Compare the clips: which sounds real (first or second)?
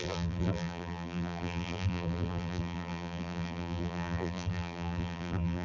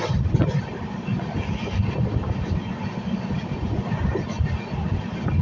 second